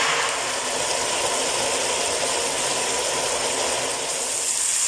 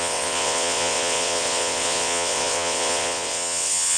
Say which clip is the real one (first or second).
first